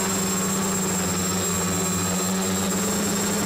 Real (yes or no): yes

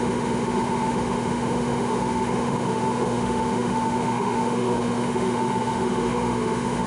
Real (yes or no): no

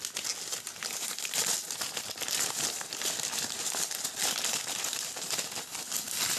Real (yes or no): yes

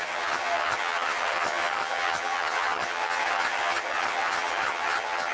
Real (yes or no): no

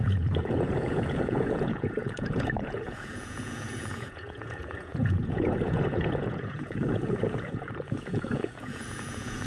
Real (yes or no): no